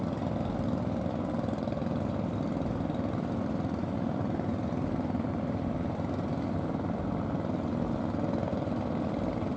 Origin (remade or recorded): recorded